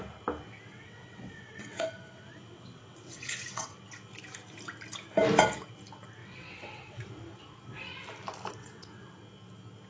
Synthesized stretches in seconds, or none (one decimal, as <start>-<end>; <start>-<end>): 0.7-3.8; 6.2-7.1; 8.6-9.2